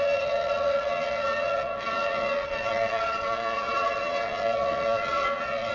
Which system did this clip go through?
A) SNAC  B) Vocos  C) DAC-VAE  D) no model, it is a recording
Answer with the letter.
B